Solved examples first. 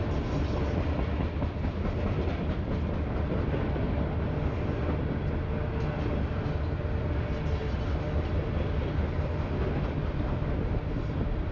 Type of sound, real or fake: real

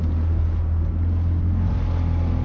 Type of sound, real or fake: real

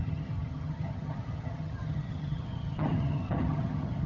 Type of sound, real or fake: fake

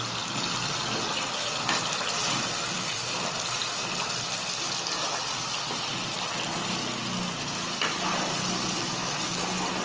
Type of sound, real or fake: real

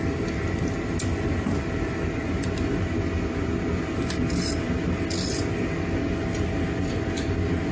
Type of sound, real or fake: real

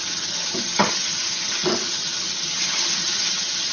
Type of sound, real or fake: fake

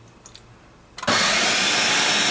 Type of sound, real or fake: real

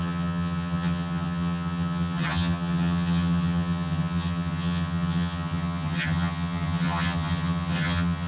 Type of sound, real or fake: fake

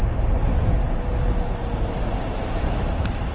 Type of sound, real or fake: real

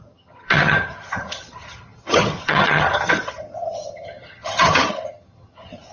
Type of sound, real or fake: fake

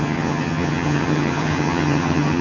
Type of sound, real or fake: fake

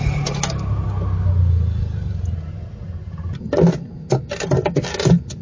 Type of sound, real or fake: real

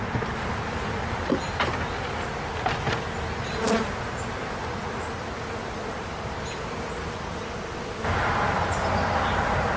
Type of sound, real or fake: real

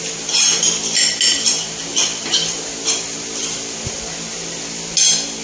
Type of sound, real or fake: real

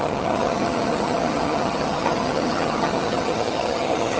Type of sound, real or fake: fake